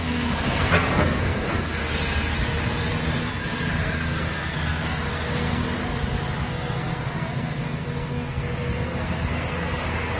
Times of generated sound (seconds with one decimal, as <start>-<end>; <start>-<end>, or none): 0.0-1.8; 3.2-5.6; 6.4-10.2